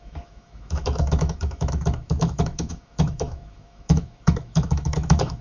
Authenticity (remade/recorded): remade